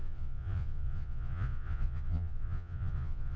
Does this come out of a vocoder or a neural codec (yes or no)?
yes